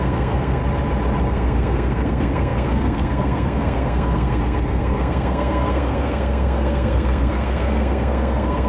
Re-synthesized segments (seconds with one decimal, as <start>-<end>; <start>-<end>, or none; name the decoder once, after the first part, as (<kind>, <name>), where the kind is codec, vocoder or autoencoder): 0.0-0.6 (codec, SNAC); 1.3-8.7

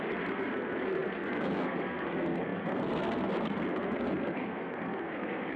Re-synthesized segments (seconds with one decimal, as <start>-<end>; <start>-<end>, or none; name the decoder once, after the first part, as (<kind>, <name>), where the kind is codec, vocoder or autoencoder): 0.0-5.6 (codec, SNAC)

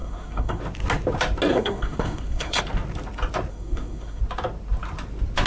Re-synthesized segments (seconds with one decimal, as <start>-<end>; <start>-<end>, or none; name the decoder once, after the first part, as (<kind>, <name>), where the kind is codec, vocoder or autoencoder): 0.0-0.6 (codec, SNAC); 1.5-2.6; 3.5-4.2